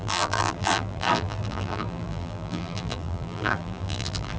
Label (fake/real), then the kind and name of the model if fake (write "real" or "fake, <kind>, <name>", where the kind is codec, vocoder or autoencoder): fake, vocoder, BigVGAN v2